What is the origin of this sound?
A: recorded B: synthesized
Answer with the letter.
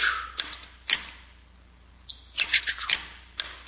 A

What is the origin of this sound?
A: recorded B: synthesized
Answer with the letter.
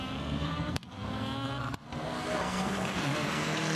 B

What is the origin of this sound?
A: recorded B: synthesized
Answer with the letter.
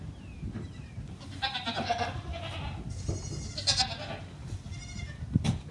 A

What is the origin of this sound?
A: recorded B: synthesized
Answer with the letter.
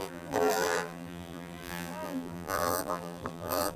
B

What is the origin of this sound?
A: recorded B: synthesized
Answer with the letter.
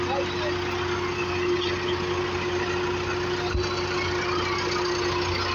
A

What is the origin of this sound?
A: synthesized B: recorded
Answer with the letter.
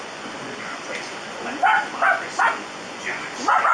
A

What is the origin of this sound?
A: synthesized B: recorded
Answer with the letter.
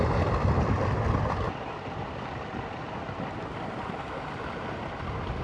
B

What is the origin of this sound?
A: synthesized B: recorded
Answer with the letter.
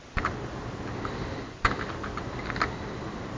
B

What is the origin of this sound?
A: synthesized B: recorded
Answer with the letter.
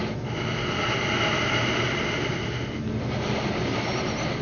B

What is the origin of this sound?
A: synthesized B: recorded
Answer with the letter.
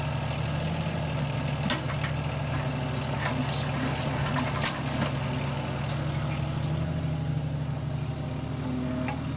B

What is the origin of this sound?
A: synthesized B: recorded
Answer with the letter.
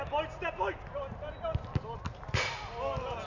B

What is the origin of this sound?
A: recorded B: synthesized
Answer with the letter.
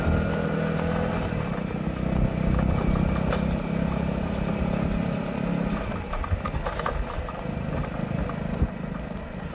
A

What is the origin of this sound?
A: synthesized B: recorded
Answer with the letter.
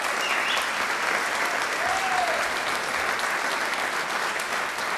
B